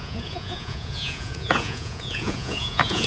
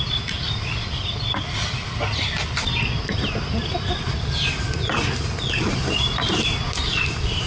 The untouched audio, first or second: second